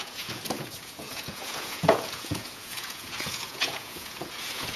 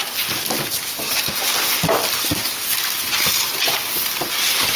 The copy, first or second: first